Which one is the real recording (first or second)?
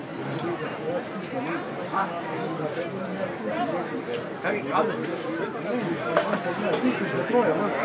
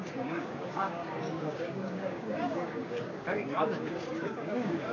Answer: first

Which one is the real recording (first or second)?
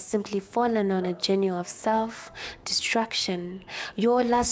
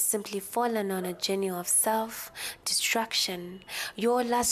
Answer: second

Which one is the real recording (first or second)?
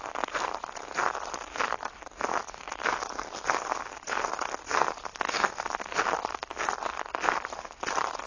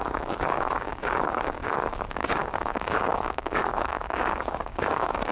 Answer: first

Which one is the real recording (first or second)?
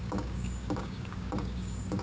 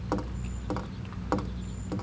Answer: second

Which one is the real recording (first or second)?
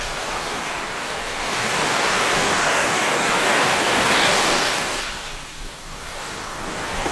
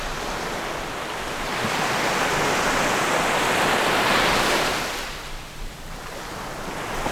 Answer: second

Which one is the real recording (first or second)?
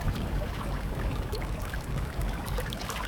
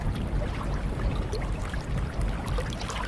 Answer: second